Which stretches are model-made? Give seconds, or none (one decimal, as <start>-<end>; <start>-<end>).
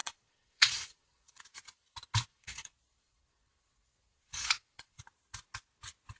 0.0-1.4; 2.3-5.0